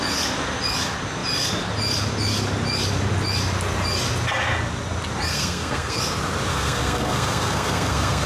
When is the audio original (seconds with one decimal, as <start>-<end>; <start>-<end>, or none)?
0.0-5.3; 6.0-6.5